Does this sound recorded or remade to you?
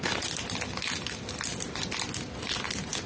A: recorded